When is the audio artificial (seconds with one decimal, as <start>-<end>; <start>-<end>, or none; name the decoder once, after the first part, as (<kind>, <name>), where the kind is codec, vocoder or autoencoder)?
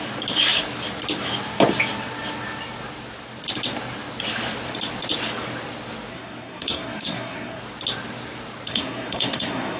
6.1-7.6 (codec, SNAC); 8.7-9.8